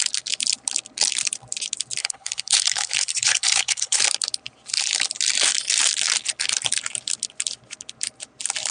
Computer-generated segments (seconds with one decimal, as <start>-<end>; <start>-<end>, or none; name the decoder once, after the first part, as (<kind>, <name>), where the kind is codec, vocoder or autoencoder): 2.0-4.0 (codec, HILCodec)